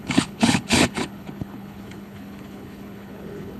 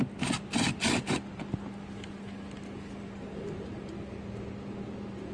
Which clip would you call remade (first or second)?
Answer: first